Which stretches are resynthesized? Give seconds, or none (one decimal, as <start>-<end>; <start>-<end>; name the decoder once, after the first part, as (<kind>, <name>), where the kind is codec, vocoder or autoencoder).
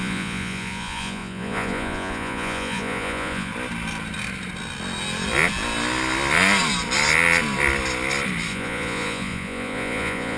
0.0-3.5 (vocoder, Vocos); 8.5-10.4